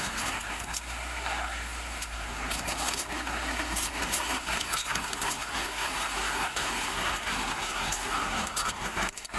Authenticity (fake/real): fake